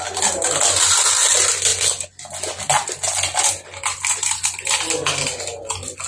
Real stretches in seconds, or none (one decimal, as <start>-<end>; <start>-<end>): 0.0-6.1